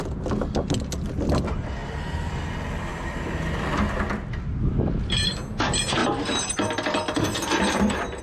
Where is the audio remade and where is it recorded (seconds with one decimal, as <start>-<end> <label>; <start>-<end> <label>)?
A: 0.0-1.8 recorded; 1.8-2.3 remade; 2.3-6.0 recorded; 6.0-8.2 remade